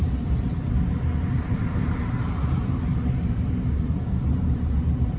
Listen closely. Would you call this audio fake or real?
fake